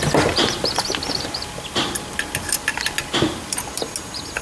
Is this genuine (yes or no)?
yes